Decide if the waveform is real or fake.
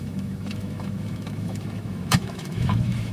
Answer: fake